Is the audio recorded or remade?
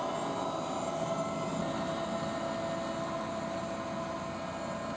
recorded